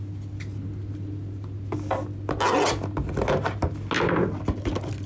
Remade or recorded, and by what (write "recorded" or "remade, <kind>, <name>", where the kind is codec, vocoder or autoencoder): recorded